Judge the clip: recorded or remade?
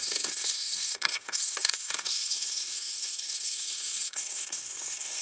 remade